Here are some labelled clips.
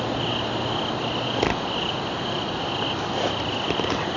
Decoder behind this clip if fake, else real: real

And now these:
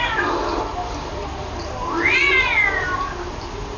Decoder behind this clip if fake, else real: real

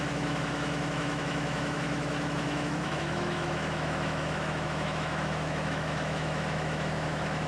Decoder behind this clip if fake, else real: fake, autoencoder, DAC-VAE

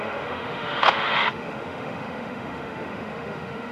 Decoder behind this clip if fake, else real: fake, autoencoder, DAC-VAE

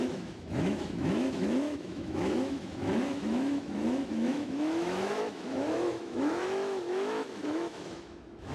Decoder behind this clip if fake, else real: fake, autoencoder, DAC-VAE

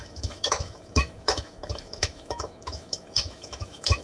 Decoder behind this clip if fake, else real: fake, autoencoder, DAC-VAE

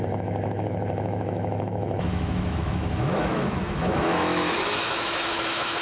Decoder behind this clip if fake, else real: fake, autoencoder, DAC-VAE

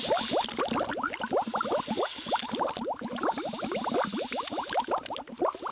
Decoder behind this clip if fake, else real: real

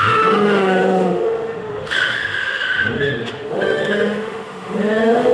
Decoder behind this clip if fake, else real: fake, autoencoder, DAC-VAE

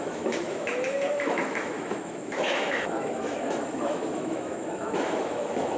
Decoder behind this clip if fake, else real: fake, autoencoder, DAC-VAE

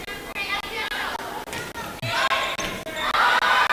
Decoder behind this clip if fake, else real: real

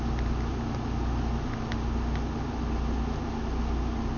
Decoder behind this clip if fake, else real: real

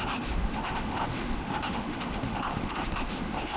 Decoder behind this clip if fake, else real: fake, autoencoder, DAC-VAE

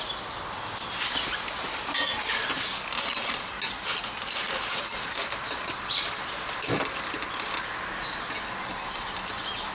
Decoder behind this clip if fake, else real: real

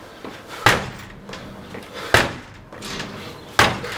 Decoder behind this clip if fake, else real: real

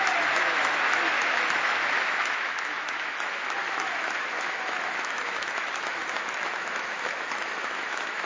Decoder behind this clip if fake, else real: fake, autoencoder, DAC-VAE